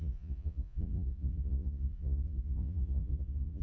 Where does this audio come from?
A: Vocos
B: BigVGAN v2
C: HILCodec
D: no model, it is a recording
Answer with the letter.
A